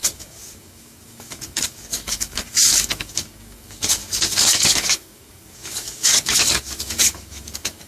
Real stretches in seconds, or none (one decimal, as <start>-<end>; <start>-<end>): none